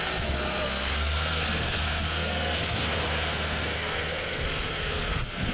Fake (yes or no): yes